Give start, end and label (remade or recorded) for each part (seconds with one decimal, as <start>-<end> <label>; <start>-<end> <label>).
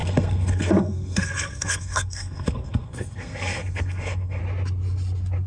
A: 0.0-4.4 remade; 4.4-5.5 recorded